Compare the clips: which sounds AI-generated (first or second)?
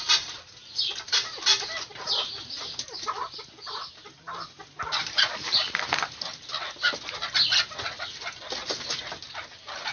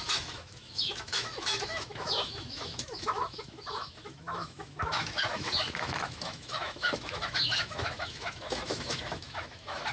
second